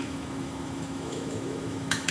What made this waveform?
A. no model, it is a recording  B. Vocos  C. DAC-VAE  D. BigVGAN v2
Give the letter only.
C